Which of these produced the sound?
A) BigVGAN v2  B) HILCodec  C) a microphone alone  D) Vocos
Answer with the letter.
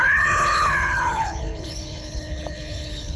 B